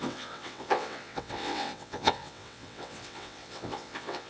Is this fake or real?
fake